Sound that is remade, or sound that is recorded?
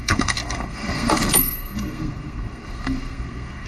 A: remade